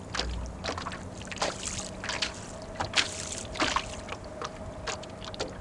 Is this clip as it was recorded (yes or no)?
yes